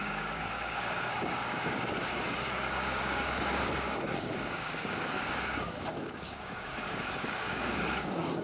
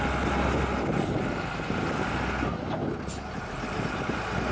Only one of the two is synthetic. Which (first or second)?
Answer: first